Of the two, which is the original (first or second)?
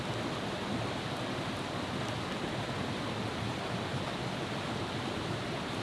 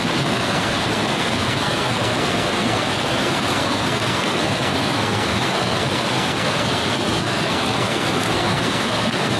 first